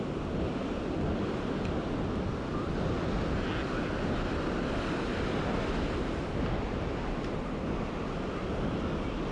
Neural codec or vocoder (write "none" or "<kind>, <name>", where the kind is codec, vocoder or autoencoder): none